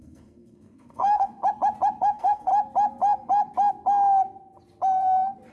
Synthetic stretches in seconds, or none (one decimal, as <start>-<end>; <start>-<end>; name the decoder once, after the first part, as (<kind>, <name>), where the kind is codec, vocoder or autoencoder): 0.0-1.3 (codec, SNAC); 2.0-2.5